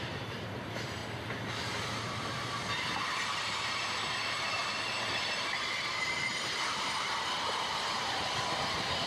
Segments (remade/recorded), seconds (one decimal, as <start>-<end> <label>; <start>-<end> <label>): 0.0-1.0 remade; 1.0-2.0 recorded; 2.0-9.1 remade